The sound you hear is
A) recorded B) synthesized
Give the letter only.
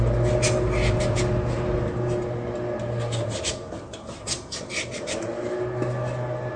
A